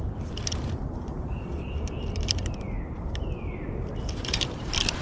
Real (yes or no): no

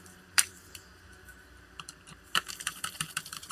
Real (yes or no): no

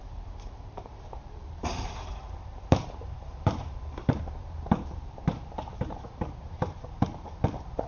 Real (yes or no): no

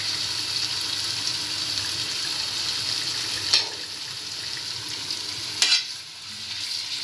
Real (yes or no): yes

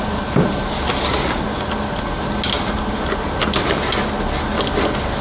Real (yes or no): yes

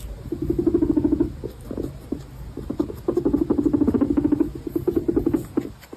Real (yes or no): yes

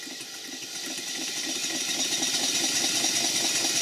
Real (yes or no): yes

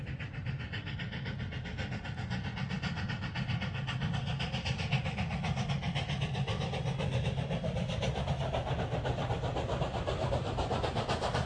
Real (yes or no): yes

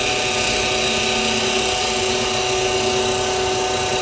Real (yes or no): yes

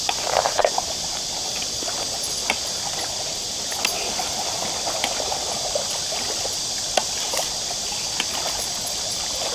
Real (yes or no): no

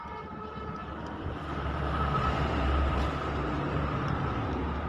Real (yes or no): no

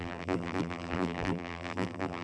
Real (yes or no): no